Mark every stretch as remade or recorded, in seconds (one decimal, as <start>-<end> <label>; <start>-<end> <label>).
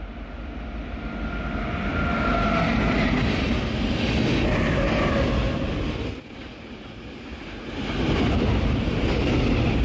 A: 0.0-9.8 recorded